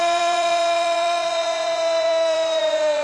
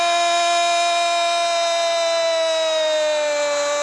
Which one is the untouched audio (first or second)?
second